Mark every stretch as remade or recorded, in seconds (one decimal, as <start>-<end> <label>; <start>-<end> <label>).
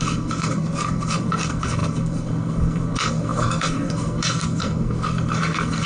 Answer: 0.0-5.9 remade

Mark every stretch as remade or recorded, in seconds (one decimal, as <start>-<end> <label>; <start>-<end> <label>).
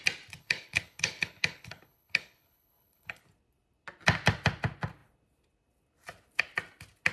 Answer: 0.0-0.4 recorded; 0.4-3.2 remade; 3.2-7.1 recorded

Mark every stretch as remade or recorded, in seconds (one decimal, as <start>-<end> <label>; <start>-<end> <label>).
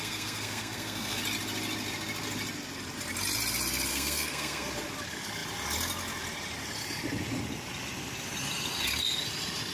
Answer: 0.0-1.2 remade; 1.2-3.9 recorded; 3.9-4.7 remade; 4.7-9.7 recorded